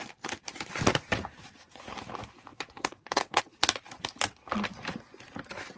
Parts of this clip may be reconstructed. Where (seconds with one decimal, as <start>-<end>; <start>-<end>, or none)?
2.5-3.4